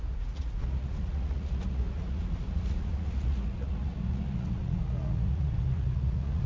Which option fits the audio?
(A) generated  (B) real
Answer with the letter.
A